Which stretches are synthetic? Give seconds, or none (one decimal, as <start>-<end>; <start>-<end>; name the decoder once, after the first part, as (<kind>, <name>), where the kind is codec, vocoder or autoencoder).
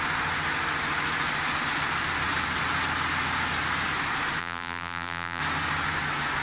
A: 4.4-5.4 (vocoder, BigVGAN v2)